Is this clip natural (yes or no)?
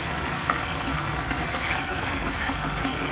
no